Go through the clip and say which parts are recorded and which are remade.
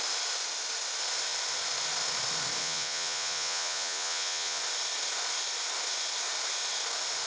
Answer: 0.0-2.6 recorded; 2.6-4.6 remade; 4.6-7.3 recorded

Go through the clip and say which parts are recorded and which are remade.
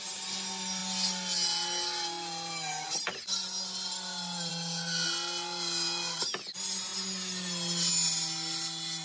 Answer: 0.0-9.0 recorded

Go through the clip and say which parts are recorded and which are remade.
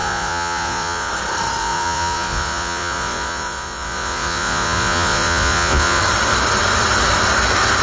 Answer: 0.0-1.1 remade; 1.1-1.6 recorded; 1.6-6.0 remade; 6.0-7.8 recorded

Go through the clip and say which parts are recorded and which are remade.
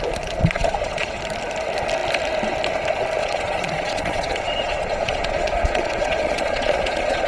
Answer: 0.0-0.4 recorded; 0.4-1.2 remade; 1.2-3.2 recorded; 3.2-7.3 remade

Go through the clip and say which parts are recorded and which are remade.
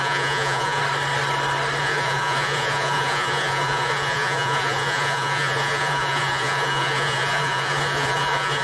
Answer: 0.0-0.8 remade; 0.8-1.8 recorded; 1.8-8.6 remade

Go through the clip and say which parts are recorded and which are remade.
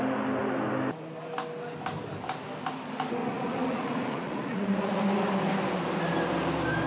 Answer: 0.0-3.2 recorded; 3.2-5.0 remade; 5.0-6.9 recorded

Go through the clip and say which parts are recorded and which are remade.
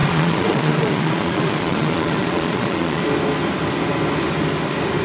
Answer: 0.0-3.0 remade; 3.0-5.0 recorded